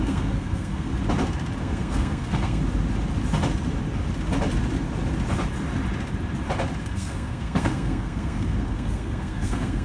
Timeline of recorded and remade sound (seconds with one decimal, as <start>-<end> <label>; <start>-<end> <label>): 0.0-0.9 remade; 0.9-1.6 recorded; 1.6-2.6 remade; 2.6-6.8 recorded; 6.8-9.8 remade

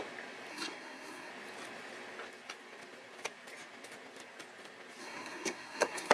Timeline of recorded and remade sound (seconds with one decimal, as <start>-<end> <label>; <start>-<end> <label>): 0.0-0.5 recorded; 0.5-1.3 remade; 1.3-5.0 recorded; 5.0-6.1 remade

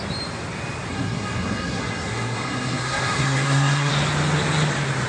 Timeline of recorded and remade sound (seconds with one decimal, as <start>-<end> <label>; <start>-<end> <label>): 0.0-0.9 recorded; 0.9-3.9 remade; 3.9-5.1 recorded